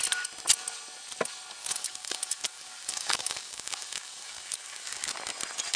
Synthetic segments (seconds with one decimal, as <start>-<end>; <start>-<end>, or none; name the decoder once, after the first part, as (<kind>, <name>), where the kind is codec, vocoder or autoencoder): 1.6-5.1 (codec, DAC)